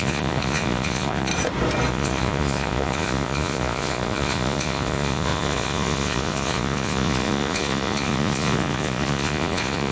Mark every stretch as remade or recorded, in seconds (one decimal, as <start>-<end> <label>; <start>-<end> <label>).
0.0-1.3 remade; 1.3-1.9 recorded; 1.9-9.9 remade